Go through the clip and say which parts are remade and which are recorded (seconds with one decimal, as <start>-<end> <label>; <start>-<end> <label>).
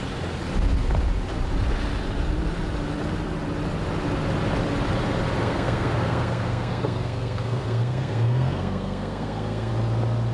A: 0.0-5.4 recorded; 5.4-9.7 remade; 9.7-10.3 recorded